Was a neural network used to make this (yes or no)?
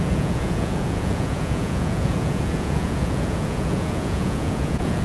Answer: yes